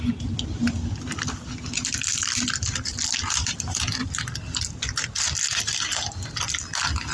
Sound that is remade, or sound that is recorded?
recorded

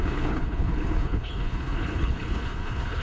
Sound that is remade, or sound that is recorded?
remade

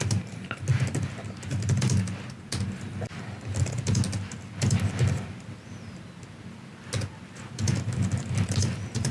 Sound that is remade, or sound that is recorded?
recorded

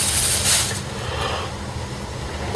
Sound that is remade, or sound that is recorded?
recorded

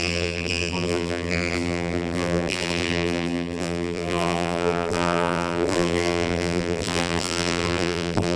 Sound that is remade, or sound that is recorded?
remade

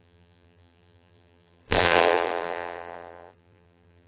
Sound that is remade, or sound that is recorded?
remade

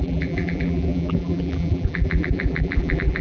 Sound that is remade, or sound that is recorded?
remade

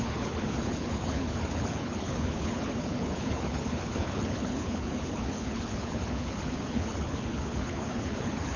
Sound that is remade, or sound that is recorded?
remade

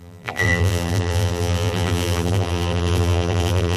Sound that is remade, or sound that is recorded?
remade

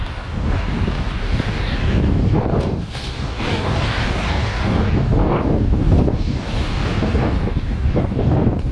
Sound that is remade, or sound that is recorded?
remade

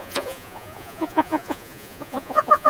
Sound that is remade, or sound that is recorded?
remade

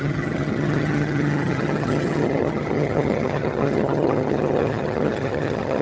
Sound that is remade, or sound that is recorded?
remade